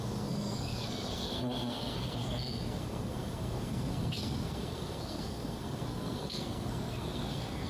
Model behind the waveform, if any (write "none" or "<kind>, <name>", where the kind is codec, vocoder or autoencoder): codec, SNAC